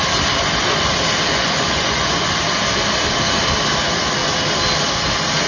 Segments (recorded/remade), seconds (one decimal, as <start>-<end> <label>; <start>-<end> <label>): 0.0-1.3 recorded; 1.3-2.3 remade; 2.3-5.5 recorded